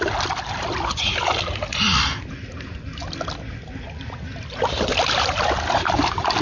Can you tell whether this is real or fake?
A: real